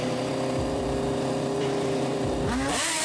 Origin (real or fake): fake